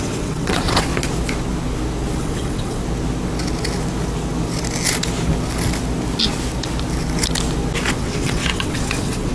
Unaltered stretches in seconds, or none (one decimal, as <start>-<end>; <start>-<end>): 0.9-2.2; 2.8-7.9